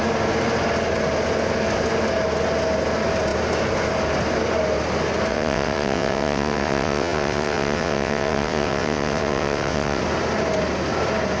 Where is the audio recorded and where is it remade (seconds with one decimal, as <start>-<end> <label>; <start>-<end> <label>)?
0.0-5.3 recorded; 5.3-10.0 remade; 10.0-11.4 recorded